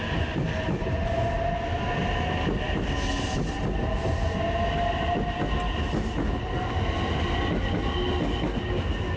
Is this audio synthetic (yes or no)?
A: no